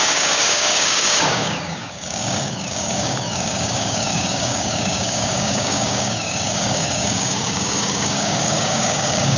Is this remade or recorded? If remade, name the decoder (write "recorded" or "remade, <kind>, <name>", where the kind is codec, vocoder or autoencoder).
remade, codec, DAC